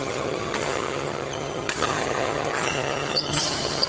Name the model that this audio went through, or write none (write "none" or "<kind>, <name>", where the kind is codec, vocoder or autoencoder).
vocoder, HiFi-GAN